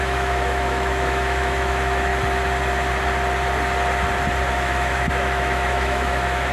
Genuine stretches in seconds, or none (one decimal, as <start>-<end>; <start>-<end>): 2.1-4.5